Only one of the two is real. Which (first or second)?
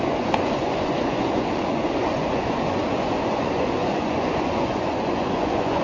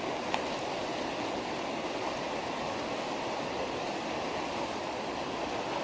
second